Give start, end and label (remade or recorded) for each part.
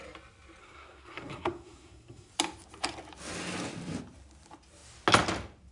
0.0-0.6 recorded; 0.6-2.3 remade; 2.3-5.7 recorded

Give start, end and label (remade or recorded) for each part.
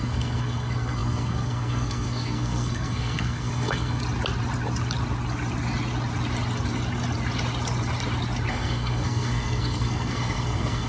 0.0-4.0 remade; 4.0-8.5 recorded; 8.5-10.9 remade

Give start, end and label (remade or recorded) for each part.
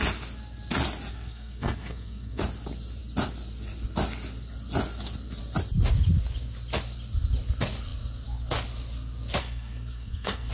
0.0-1.1 recorded; 1.1-2.4 remade; 2.4-9.4 recorded; 9.4-10.5 remade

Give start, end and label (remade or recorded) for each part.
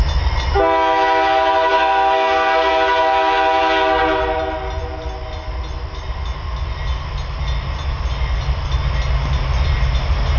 0.0-1.7 recorded; 1.7-2.7 remade; 2.7-10.4 recorded